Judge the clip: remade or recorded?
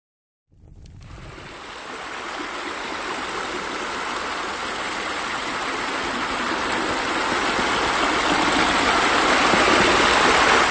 recorded